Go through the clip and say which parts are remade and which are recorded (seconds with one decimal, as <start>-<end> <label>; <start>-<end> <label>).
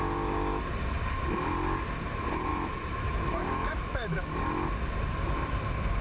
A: 0.0-2.5 recorded; 2.5-4.2 remade; 4.2-6.0 recorded